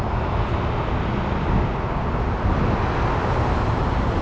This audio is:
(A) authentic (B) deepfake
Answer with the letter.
A